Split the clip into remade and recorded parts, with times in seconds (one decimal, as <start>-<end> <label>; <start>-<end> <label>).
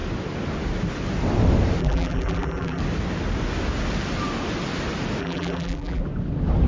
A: 0.0-1.8 recorded; 1.8-2.8 remade; 2.8-5.2 recorded; 5.2-6.0 remade; 6.0-6.7 recorded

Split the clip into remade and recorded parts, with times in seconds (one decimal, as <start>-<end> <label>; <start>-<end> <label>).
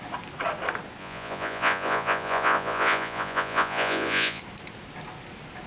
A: 0.0-1.0 recorded; 1.0-4.4 remade; 4.4-5.7 recorded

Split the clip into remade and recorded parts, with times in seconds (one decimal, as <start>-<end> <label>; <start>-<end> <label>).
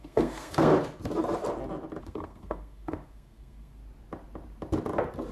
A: 0.0-0.7 remade; 0.7-2.0 recorded; 2.0-3.8 remade; 3.8-5.3 recorded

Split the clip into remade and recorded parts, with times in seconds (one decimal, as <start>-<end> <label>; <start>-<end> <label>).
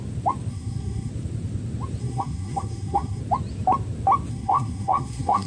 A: 0.0-0.5 recorded; 0.5-1.1 remade; 1.1-2.0 recorded; 2.0-3.2 remade; 3.2-4.3 recorded; 4.3-5.5 remade